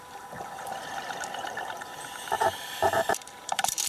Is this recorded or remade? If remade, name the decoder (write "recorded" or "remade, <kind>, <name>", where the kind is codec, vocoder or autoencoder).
remade, vocoder, BigVGAN v2